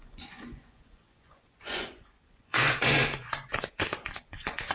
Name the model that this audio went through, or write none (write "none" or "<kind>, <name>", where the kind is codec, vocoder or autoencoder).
vocoder, Vocos